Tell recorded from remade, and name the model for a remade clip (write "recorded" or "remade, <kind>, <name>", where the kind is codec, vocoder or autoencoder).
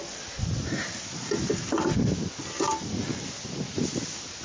recorded